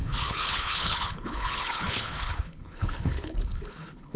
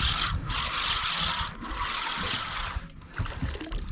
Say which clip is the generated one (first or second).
first